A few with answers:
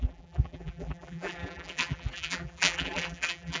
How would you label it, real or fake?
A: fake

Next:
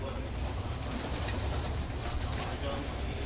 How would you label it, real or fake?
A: fake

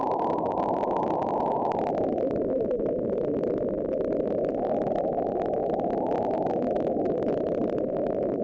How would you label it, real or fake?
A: fake